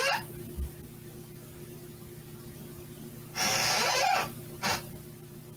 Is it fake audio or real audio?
real